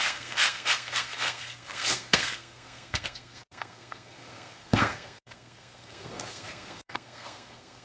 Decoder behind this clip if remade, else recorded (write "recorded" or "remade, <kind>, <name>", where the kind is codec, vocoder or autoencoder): remade, codec, SNAC